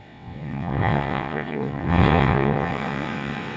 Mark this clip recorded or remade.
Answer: remade